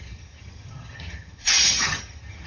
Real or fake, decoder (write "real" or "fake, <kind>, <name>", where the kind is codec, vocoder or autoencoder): fake, vocoder, HiFi-GAN